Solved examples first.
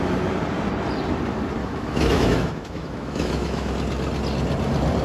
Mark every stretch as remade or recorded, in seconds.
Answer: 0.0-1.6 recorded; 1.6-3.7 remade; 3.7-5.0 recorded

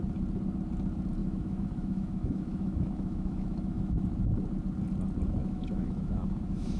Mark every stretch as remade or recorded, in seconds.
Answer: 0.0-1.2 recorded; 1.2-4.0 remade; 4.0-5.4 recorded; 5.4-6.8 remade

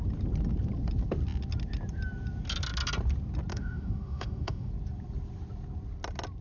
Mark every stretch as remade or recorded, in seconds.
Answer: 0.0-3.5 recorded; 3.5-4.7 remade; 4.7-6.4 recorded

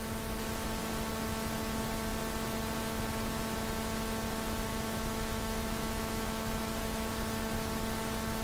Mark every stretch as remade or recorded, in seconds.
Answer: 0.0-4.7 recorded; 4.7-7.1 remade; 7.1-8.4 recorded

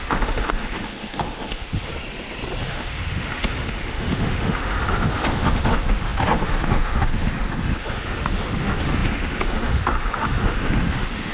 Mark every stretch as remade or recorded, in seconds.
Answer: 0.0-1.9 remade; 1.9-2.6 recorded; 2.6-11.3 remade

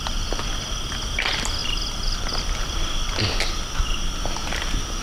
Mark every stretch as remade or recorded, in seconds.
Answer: 0.0-5.0 recorded

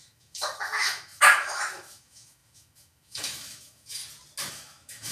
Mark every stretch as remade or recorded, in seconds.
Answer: 0.0-4.0 remade; 4.0-4.5 recorded; 4.5-5.1 remade

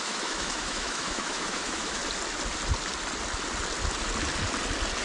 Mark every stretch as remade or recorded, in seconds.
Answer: 0.0-2.0 remade; 2.0-5.0 recorded